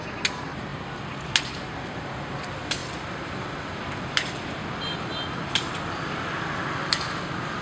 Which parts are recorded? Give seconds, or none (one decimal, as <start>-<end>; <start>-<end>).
0.0-7.6